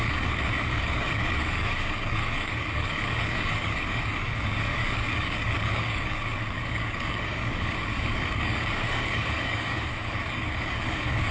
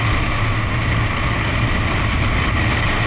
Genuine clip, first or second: second